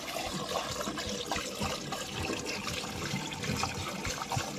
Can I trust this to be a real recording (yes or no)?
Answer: yes